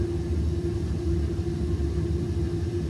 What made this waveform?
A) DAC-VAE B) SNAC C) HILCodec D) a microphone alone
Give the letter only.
D